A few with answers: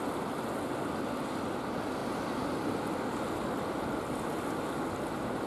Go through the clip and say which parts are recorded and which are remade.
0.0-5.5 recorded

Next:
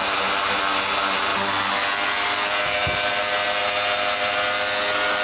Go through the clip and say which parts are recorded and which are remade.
0.0-0.6 remade; 0.6-1.3 recorded; 1.3-4.4 remade; 4.4-5.2 recorded

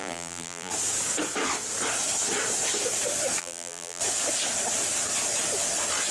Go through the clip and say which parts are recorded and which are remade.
0.0-0.7 remade; 0.7-3.4 recorded; 3.4-4.0 remade; 4.0-6.1 recorded

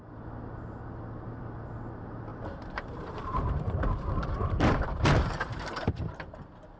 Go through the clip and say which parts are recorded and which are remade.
0.0-2.3 recorded; 2.3-6.2 remade; 6.2-6.8 recorded

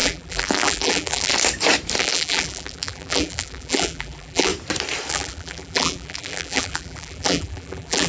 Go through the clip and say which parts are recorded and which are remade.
0.0-1.3 remade; 1.3-2.0 recorded; 2.0-4.5 remade; 4.5-5.1 recorded; 5.1-8.1 remade

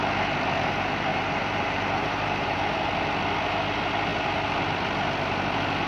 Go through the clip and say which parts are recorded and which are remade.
0.0-1.1 recorded; 1.1-2.7 remade; 2.7-5.9 recorded